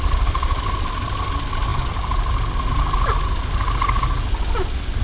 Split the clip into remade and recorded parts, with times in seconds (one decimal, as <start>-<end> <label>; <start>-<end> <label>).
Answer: 0.0-5.0 recorded